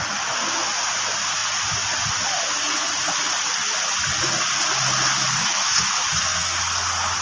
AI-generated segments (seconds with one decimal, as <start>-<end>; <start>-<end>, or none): 5.4-6.6